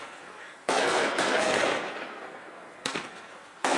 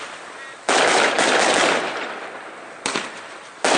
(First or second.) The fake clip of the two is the first